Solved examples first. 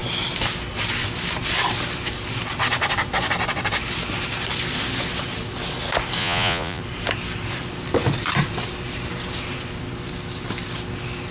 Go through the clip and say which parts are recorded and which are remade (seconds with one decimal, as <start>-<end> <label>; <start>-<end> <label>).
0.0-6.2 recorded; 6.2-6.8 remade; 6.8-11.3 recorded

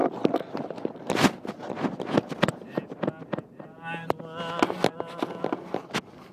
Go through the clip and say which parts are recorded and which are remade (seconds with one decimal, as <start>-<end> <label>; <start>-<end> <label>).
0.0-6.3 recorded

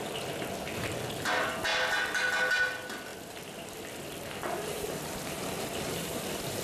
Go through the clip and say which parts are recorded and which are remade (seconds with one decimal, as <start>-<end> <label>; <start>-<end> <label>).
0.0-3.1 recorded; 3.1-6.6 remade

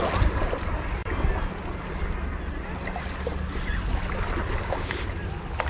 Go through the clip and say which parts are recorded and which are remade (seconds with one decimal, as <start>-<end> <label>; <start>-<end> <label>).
0.0-4.6 recorded; 4.6-5.1 remade; 5.1-5.7 recorded

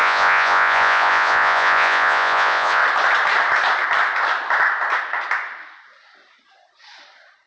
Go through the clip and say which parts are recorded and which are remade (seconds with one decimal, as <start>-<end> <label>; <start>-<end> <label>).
0.0-2.8 remade; 2.8-7.5 recorded